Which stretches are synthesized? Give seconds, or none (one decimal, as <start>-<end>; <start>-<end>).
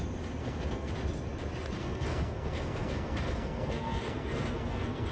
0.4-0.9; 1.8-5.1